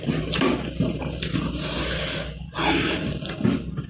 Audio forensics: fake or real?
real